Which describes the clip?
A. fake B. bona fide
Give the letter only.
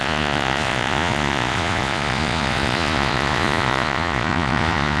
A